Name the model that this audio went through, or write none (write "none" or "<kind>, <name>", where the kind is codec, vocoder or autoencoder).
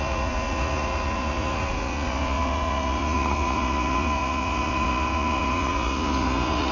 vocoder, Vocos